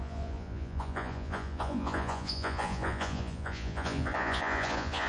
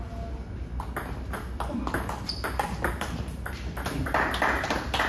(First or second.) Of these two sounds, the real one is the second